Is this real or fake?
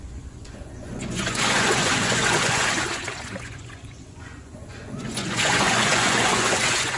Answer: fake